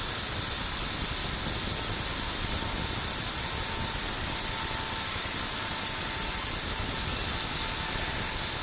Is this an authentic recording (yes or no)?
yes